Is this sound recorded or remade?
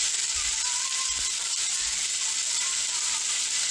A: recorded